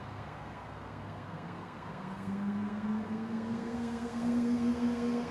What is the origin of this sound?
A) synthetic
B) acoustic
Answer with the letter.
A